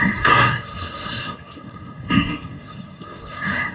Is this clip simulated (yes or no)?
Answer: yes